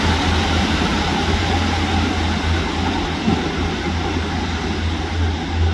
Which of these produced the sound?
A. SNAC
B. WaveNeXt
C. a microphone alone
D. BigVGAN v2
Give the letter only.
C